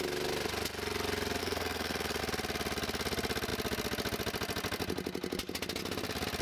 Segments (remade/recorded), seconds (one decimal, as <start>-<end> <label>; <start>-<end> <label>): 0.0-1.4 recorded; 1.4-2.2 remade; 2.2-6.4 recorded